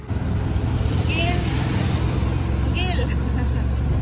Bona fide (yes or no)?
yes